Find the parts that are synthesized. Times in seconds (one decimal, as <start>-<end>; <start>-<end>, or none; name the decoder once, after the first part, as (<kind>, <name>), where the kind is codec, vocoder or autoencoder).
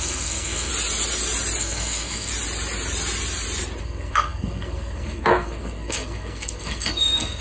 0.0-0.7 (codec, SNAC); 1.6-2.3; 3.8-7.4